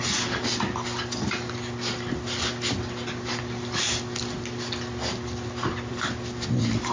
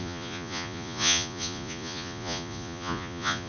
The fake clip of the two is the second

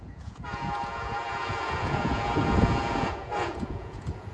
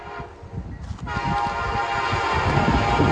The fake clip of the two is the first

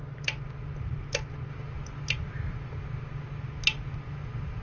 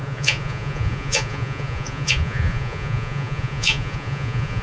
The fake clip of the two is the second